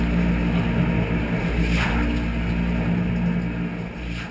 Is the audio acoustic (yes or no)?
yes